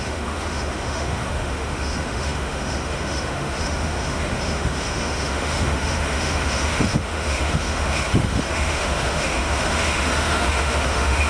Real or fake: fake